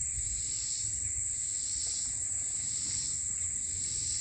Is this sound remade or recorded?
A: recorded